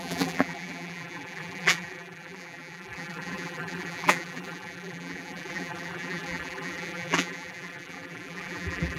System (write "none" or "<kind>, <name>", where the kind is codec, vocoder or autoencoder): vocoder, BigVGAN v2